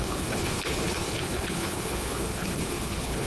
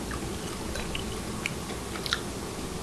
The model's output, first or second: first